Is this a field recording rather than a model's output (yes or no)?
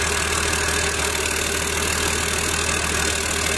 yes